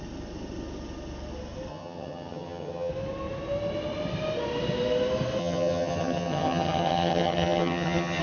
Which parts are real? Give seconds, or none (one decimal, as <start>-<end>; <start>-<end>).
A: 0.0-1.7; 2.9-5.4